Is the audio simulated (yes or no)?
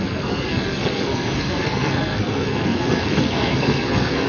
yes